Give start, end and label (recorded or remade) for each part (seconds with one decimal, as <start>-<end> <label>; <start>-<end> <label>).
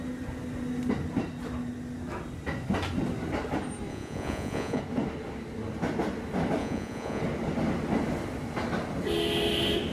0.0-3.9 recorded; 3.9-4.8 remade; 4.8-6.6 recorded; 6.6-7.2 remade; 7.2-9.9 recorded